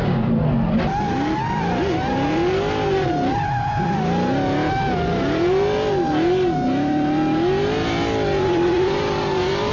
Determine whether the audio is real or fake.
real